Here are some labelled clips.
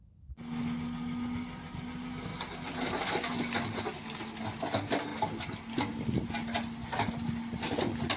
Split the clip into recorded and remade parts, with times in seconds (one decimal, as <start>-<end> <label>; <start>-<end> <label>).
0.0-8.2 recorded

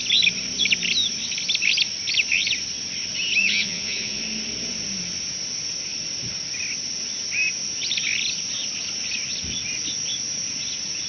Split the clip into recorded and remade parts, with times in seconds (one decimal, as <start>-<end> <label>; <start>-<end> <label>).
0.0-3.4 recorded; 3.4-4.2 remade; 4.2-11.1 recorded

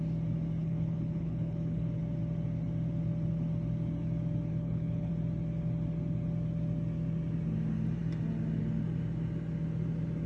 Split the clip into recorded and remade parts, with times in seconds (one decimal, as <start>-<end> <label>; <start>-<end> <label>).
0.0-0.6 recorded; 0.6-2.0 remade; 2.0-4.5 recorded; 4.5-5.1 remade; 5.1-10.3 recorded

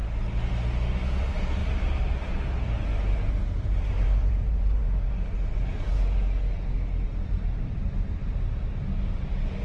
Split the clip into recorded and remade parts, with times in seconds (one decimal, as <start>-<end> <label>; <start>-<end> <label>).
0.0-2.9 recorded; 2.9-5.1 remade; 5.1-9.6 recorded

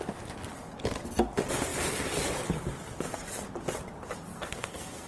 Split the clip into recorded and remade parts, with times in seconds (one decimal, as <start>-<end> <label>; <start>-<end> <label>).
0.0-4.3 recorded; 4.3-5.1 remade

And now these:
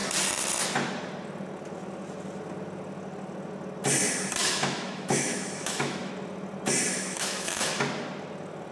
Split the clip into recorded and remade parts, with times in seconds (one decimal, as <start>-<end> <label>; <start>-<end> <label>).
0.0-4.4 recorded; 4.4-6.1 remade; 6.1-6.9 recorded; 6.9-7.7 remade; 7.7-8.7 recorded